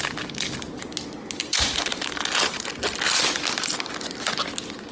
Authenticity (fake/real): real